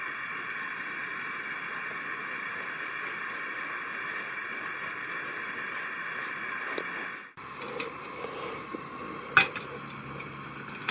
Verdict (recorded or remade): recorded